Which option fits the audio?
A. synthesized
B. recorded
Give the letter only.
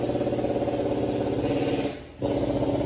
B